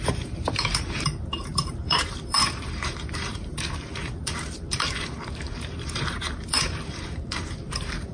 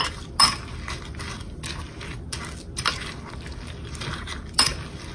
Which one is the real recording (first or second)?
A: second